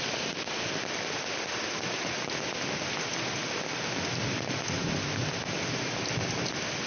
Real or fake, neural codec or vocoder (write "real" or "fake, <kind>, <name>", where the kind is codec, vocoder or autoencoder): real